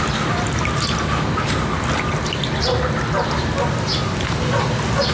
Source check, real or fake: real